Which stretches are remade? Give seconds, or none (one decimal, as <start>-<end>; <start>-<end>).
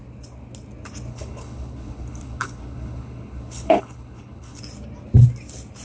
1.1-4.6